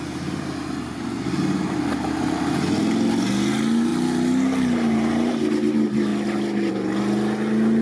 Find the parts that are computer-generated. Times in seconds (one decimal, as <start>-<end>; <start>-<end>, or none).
none